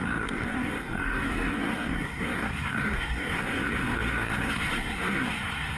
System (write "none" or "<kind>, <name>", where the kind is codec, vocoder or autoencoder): codec, SNAC